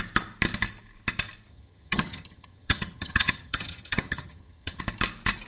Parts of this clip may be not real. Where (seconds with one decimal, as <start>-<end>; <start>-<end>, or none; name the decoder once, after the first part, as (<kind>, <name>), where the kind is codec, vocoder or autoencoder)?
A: 1.5-4.8 (vocoder, HiFi-GAN)